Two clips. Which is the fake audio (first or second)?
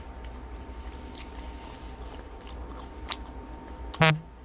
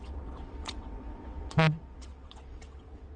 second